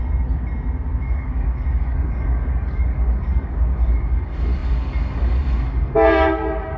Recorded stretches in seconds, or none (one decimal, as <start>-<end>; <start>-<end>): 0.0-1.0

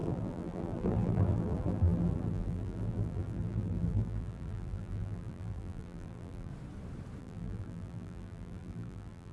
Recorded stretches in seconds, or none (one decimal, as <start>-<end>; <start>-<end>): 6.5-7.2

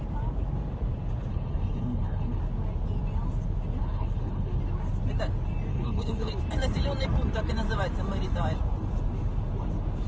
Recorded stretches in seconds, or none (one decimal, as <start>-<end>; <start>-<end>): 0.0-1.3; 2.4-3.8; 4.6-5.7; 6.3-10.1

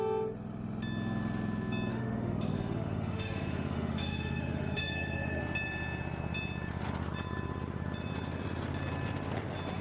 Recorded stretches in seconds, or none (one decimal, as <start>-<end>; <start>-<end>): 0.0-1.9; 5.4-9.8

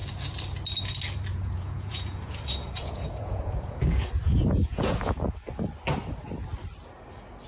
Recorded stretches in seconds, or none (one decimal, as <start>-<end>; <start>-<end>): 0.0-1.3; 5.1-7.5

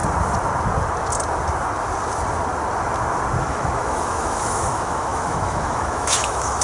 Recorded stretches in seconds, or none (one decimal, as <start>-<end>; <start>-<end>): 0.0-3.4

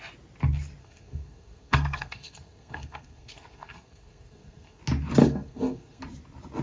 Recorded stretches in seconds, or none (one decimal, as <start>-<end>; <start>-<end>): 0.0-0.8; 4.8-5.2; 6.0-6.6

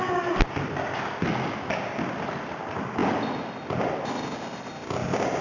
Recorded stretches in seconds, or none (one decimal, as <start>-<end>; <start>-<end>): 0.0-5.4